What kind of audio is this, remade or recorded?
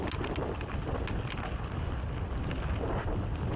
recorded